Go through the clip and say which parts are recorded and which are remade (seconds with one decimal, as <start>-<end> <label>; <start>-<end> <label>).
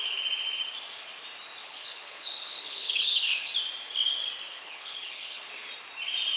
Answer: 0.0-1.6 recorded; 1.6-3.5 remade; 3.5-4.5 recorded; 4.5-5.5 remade; 5.5-6.4 recorded